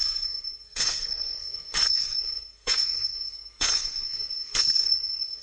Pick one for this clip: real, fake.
fake